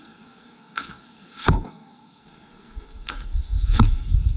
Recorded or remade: remade